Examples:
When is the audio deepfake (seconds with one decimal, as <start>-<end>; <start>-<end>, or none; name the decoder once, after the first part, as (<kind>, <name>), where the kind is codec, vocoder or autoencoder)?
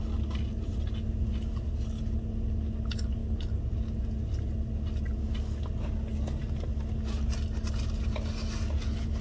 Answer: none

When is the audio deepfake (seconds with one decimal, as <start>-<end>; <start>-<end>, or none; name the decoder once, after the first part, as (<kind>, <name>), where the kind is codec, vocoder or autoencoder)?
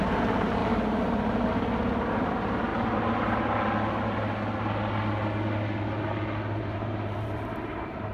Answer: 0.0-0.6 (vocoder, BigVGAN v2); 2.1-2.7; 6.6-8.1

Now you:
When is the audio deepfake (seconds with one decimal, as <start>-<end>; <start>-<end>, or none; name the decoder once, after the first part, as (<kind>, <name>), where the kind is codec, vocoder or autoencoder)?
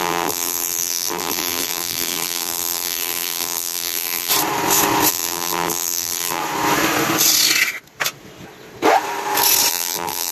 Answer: 0.0-4.3 (vocoder, BigVGAN v2); 5.1-6.4; 9.7-10.3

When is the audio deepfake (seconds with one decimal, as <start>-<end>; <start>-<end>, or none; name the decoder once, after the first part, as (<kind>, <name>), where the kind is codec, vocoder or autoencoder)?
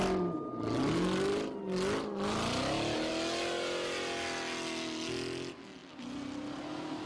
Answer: none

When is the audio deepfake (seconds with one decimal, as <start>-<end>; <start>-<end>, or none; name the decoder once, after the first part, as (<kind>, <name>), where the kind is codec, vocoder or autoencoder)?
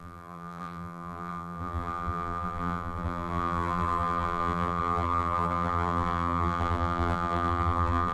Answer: 0.0-8.1 (vocoder, BigVGAN v2)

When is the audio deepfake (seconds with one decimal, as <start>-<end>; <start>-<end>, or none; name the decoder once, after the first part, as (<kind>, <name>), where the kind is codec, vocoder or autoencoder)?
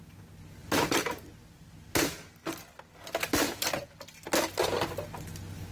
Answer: none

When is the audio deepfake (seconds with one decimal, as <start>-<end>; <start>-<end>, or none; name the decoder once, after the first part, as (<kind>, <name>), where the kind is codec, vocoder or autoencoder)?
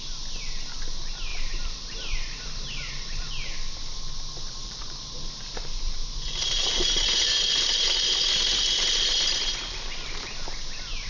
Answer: 1.3-3.3 (vocoder, BigVGAN v2); 4.6-7.6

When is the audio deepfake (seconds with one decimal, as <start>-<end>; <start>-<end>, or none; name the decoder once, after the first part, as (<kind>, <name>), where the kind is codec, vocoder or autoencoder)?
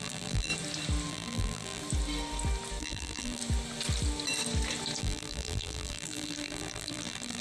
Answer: 0.0-0.5 (vocoder, BigVGAN v2); 1.1-1.8; 2.8-3.4; 5.0-7.4